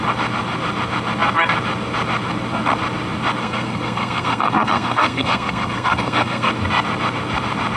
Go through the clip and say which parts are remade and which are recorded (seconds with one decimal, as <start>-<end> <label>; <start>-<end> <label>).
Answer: 0.0-3.4 recorded; 3.4-6.5 remade; 6.5-7.8 recorded